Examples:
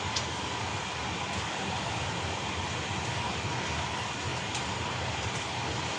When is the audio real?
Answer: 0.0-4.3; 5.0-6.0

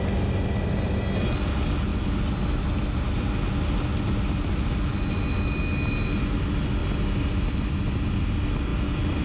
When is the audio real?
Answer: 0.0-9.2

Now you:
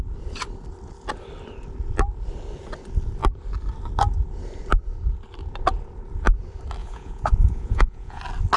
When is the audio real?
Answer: 0.0-6.8; 8.2-8.6

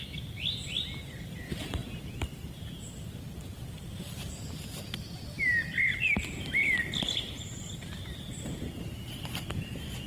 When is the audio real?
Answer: 0.0-10.1

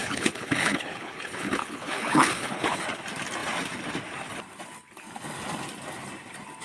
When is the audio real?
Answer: 2.8-6.6